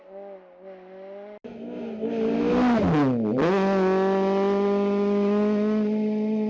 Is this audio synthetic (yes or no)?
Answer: no